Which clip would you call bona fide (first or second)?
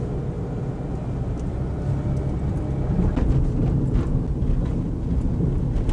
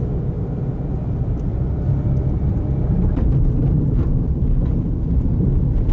first